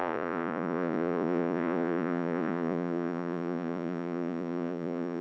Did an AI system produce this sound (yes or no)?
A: yes